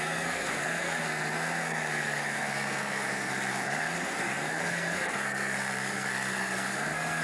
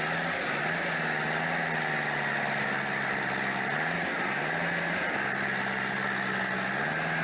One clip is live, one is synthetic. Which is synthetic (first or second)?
first